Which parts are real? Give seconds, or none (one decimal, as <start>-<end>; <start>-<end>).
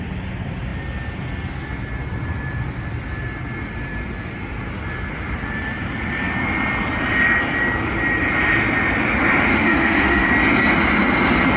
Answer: 0.0-9.5; 10.3-11.6